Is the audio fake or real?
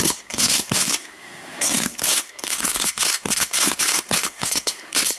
fake